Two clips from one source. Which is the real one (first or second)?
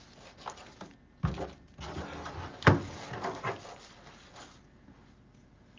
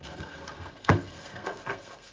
first